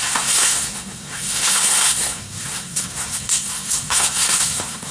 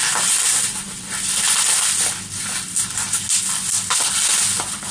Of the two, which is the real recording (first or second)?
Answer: second